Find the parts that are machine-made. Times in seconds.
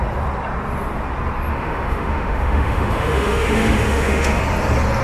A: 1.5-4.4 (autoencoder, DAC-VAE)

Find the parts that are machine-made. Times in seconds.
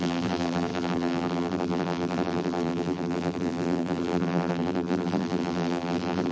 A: 0.0-6.3 (vocoder, BigVGAN v2)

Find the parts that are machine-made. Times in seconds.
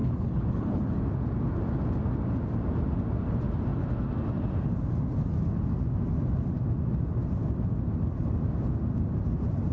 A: 0.0-1.0 (codec, HILCodec)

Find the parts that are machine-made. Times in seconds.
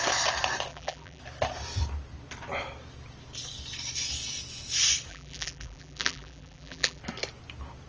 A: 0.7-1.2 (vocoder, BigVGAN v2); 5.1-7.0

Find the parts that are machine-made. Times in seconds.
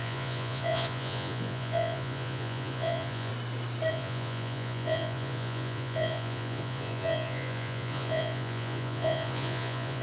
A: 0.0-3.3 (vocoder, Vocos); 3.9-10.0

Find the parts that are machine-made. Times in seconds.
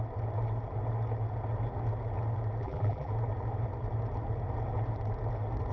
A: 2.6-3.1 (vocoder, BigVGAN v2)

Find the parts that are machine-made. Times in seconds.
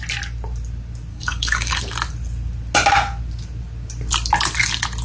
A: 1.1-1.8 (codec, DAC)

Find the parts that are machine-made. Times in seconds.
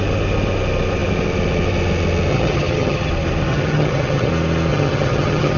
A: 2.3-3.1 (vocoder, HiFi-GAN); 3.5-4.3; 4.7-5.6